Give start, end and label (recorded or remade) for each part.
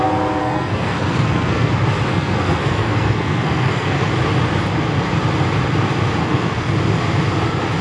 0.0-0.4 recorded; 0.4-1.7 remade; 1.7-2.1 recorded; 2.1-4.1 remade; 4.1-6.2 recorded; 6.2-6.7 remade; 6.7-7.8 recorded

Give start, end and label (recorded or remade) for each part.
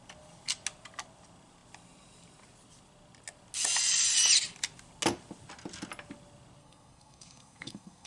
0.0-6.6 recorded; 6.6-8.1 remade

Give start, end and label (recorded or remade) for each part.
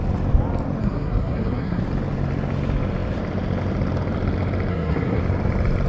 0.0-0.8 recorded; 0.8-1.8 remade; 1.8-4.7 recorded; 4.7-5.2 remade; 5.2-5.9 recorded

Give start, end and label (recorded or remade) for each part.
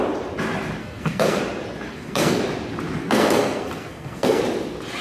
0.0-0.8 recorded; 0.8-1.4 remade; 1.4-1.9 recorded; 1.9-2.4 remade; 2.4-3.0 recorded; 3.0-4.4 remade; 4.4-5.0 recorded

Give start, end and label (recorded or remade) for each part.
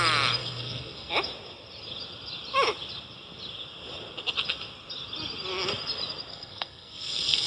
0.0-0.4 recorded; 0.4-1.1 remade; 1.1-6.3 recorded; 6.3-7.5 remade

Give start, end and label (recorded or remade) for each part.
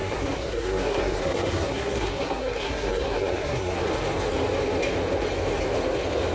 0.0-3.8 remade; 3.8-6.3 recorded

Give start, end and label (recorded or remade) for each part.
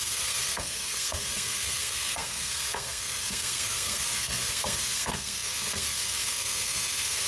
0.0-7.3 remade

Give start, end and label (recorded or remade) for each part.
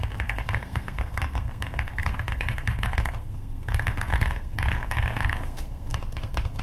0.0-6.6 remade